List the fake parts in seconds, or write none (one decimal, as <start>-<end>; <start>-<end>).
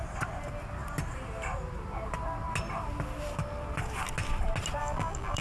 4.8-5.4